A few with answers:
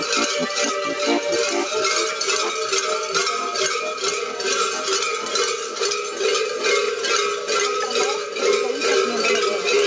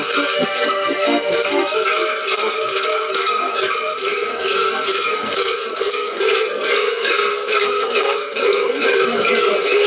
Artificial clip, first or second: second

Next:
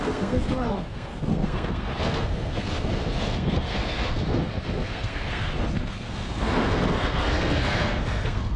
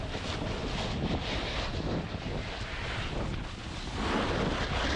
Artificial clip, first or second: first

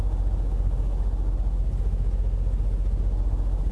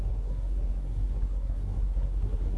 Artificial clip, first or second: second